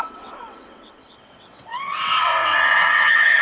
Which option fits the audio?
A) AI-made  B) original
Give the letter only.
A